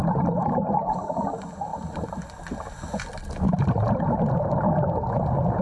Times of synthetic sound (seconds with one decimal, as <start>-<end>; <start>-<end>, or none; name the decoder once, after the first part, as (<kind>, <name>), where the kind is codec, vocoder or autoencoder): 0.0-1.2 (vocoder, BigVGAN v2)